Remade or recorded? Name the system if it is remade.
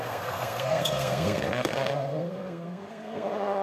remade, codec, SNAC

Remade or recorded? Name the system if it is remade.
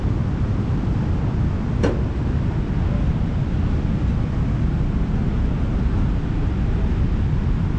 recorded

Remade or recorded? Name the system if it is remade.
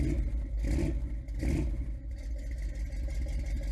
recorded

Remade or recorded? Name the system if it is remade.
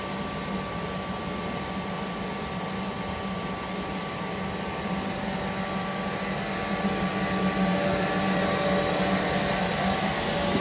recorded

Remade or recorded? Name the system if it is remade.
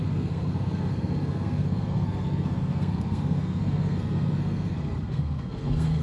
remade, codec, SNAC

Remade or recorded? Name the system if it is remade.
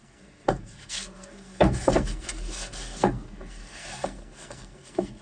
remade, codec, SNAC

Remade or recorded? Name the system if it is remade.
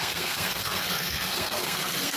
remade, codec, SNAC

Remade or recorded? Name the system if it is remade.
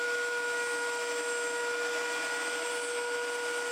recorded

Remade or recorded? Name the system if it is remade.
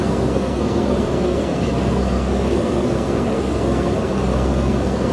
remade, codec, SNAC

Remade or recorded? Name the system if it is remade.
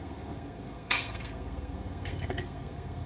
remade, codec, SNAC